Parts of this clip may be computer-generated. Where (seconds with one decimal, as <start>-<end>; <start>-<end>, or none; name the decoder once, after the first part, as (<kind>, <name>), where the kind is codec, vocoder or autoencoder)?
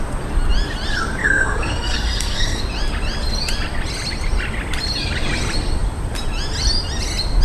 1.2-2.6 (codec, SNAC)